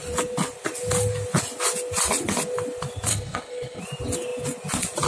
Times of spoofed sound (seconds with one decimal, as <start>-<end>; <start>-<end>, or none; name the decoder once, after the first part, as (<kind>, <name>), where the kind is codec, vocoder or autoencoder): 3.1-3.8 (codec, HILCodec)